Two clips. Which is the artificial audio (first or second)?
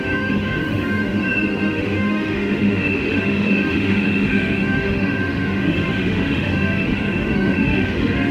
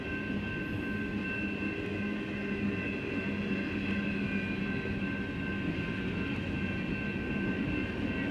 first